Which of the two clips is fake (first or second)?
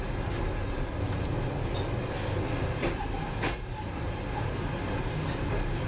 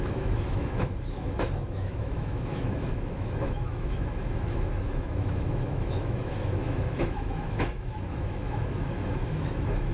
second